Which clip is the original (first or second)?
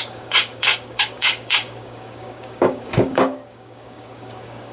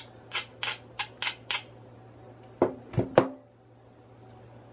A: second